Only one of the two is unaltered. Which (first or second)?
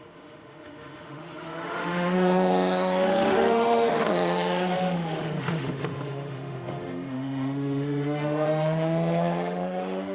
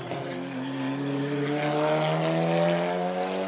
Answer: second